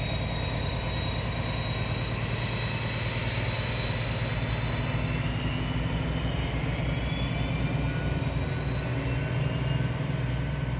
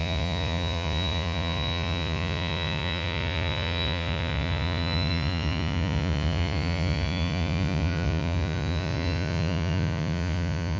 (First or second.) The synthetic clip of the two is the second